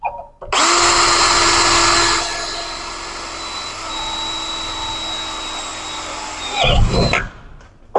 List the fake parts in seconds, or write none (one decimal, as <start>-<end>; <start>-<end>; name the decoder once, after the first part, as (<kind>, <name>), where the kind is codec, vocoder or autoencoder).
none